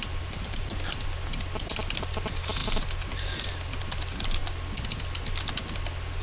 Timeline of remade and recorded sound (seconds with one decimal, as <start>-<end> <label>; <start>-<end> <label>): 0.0-6.2 recorded